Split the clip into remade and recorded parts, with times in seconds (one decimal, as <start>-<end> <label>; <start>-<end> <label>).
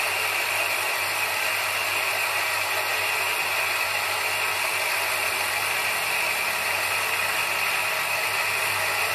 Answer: 0.0-9.1 recorded